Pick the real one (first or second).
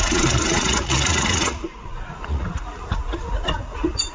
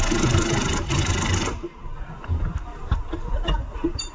second